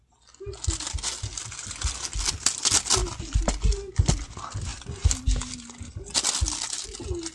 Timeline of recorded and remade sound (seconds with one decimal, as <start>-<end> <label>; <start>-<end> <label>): 0.0-7.3 recorded